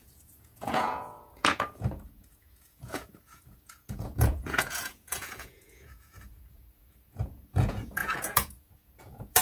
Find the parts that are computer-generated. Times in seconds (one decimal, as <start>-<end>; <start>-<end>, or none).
0.0-9.4